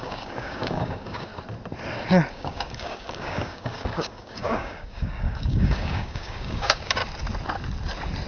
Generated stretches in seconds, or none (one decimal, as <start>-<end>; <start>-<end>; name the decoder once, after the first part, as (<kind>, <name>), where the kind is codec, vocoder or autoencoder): 0.0-1.3 (codec, DAC); 2.3-7.0